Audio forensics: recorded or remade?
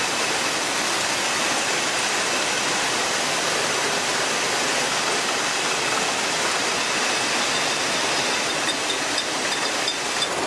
recorded